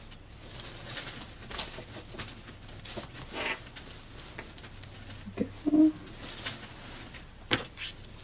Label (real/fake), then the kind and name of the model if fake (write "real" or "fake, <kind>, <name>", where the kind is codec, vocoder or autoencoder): real